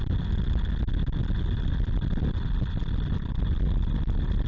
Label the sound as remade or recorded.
recorded